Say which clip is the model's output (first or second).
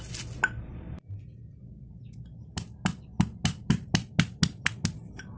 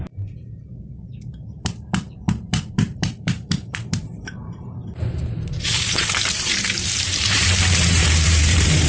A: second